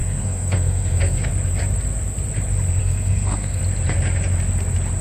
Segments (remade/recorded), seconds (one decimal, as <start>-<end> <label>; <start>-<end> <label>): 0.0-1.3 remade; 1.3-2.8 recorded; 2.8-3.6 remade; 3.6-5.0 recorded